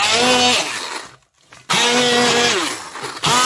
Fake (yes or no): no